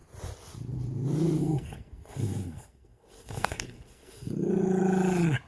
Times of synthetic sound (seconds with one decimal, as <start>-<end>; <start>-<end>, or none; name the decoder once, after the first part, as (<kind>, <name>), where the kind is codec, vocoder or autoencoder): 1.4-4.5 (codec, SNAC)